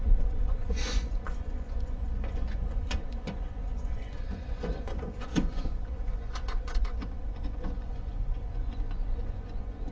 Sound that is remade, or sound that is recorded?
remade